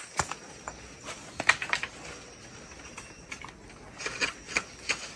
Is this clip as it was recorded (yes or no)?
yes